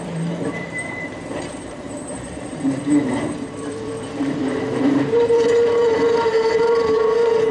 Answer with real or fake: fake